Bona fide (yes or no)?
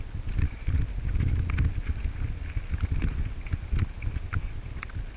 yes